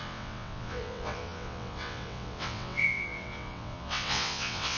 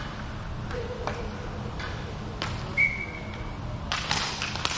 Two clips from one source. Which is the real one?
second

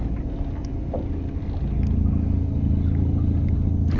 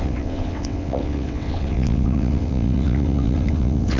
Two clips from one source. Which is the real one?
first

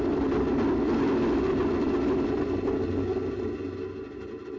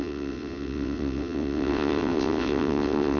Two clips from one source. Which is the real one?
first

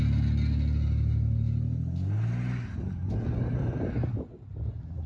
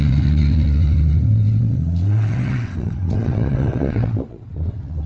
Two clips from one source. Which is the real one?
first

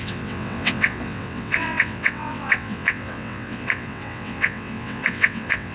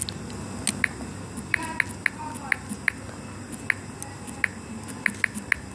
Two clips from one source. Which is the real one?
second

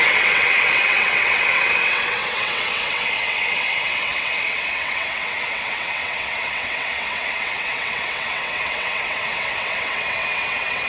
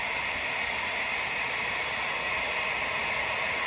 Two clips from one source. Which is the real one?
second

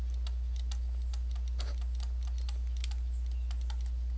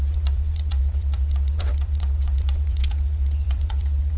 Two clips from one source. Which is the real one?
first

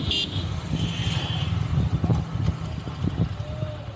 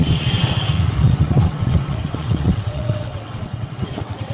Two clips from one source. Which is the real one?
first